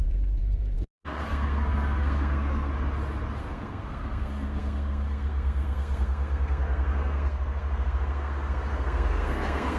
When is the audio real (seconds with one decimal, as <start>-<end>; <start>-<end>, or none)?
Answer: 2.7-3.4

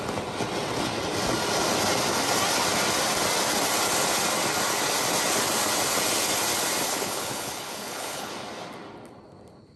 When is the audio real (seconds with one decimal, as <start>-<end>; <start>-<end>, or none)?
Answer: 0.0-6.9; 8.3-9.8

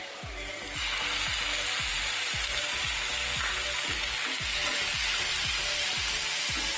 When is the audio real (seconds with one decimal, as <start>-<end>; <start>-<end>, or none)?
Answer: 0.0-1.9; 2.8-6.8

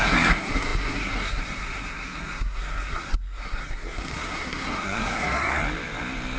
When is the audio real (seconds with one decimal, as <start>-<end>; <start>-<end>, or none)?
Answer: 5.6-6.4